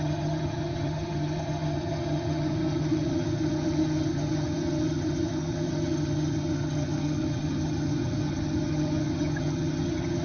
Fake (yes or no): yes